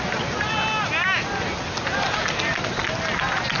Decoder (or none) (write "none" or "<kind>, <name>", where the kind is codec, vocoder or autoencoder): none